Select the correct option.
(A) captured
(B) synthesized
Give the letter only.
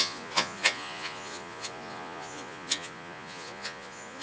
B